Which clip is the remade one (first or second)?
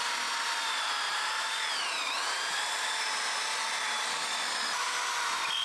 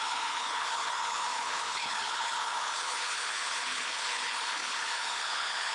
second